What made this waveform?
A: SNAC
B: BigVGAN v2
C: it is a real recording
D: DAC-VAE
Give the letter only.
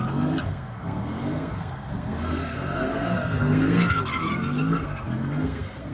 A